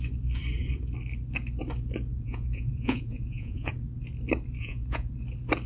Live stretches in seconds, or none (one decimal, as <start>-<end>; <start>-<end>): 0.0-2.1; 3.7-4.6; 5.1-5.7